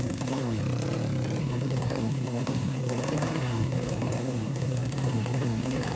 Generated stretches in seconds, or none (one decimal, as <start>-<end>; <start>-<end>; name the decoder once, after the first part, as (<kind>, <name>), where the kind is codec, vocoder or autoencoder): 0.0-0.6 (codec, SNAC); 1.4-6.0